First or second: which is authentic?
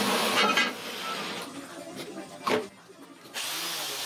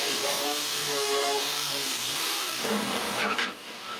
first